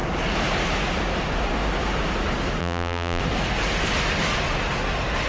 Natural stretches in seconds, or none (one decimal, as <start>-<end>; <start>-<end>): 0.0-2.6; 3.2-5.3